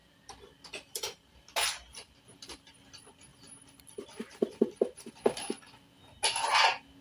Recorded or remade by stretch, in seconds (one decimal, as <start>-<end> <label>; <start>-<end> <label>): 0.0-7.0 recorded